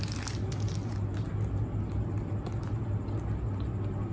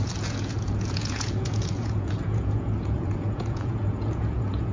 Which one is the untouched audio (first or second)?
first